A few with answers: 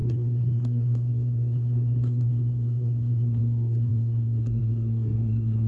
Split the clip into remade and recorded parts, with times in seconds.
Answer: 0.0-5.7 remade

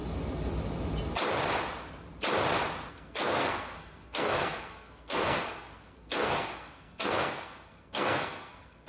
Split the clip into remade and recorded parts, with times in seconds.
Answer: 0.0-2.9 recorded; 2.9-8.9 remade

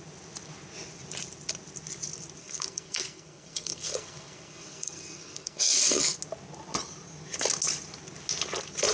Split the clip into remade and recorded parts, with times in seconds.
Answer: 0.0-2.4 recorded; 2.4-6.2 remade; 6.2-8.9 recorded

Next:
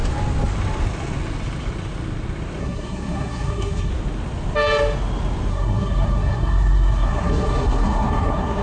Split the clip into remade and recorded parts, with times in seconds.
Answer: 0.0-2.6 recorded; 2.6-3.9 remade; 3.9-5.5 recorded; 5.5-8.6 remade

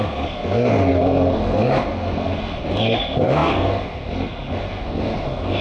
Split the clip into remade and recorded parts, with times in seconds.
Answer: 0.0-5.6 remade

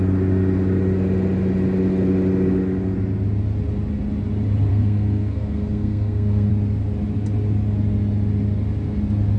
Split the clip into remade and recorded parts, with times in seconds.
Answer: 0.0-4.7 recorded; 4.7-6.5 remade; 6.5-9.4 recorded